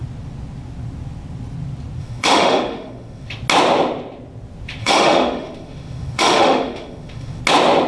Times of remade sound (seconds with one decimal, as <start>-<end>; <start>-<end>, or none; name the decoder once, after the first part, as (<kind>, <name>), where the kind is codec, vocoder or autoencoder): 2.0-3.3 (autoencoder, DAC-VAE); 4.8-7.4